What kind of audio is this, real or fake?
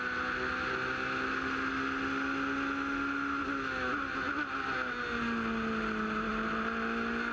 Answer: real